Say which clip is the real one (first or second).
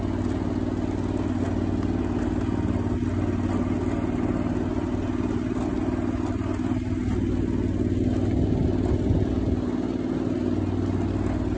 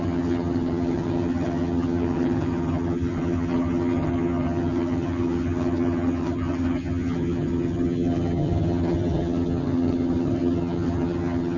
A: first